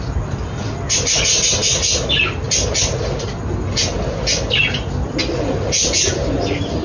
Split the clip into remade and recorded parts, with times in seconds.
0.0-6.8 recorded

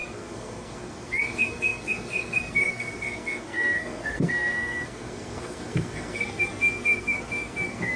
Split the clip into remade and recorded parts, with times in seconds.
0.0-8.0 remade

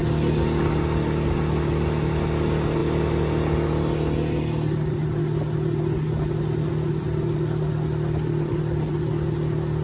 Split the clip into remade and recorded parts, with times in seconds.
0.0-9.8 recorded

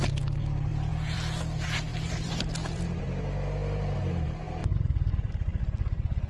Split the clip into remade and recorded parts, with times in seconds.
0.0-1.9 recorded; 1.9-3.0 remade; 3.0-4.6 recorded; 4.6-5.3 remade; 5.3-6.3 recorded

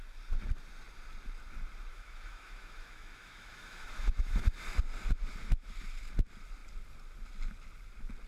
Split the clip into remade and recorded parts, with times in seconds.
0.0-1.9 recorded; 1.9-4.4 remade; 4.4-8.3 recorded

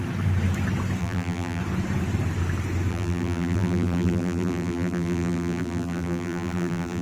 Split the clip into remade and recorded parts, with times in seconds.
0.0-1.0 recorded; 1.0-1.6 remade; 1.6-2.9 recorded; 2.9-7.0 remade

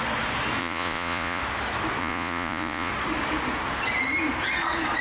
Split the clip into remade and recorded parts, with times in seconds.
0.0-0.6 recorded; 0.6-1.4 remade; 1.4-2.0 recorded; 2.0-2.9 remade; 2.9-5.0 recorded

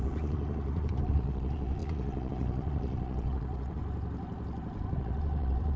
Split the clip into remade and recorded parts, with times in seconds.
0.0-3.8 remade; 3.8-5.0 recorded; 5.0-5.8 remade